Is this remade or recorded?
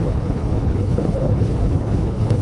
remade